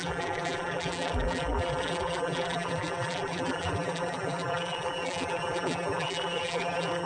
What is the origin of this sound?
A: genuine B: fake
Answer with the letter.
B